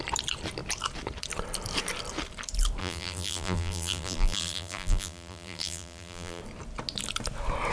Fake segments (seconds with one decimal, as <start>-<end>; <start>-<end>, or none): 2.8-6.4